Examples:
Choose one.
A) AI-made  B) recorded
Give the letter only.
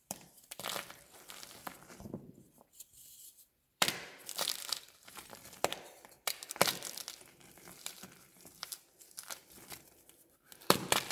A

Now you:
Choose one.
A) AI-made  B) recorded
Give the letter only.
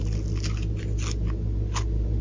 B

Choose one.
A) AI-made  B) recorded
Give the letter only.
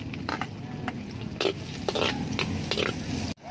B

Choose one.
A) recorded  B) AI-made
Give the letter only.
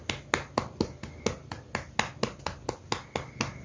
A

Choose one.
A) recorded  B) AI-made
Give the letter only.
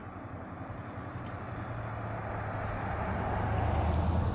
A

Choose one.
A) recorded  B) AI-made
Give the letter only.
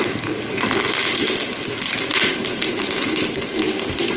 A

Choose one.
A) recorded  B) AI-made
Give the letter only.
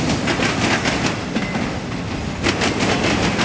A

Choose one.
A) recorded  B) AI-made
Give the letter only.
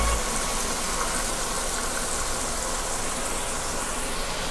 A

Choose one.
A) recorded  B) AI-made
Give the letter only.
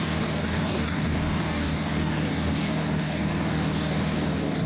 B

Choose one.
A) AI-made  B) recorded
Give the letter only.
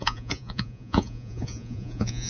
A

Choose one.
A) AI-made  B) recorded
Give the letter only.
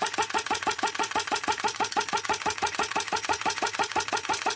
A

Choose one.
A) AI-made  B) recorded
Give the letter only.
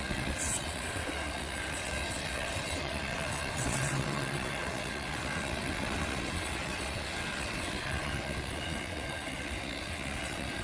A